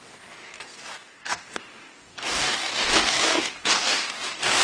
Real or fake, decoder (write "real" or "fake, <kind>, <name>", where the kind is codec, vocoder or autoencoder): fake, codec, DAC